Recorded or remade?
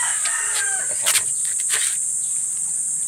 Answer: remade